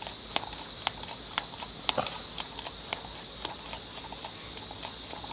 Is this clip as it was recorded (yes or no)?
yes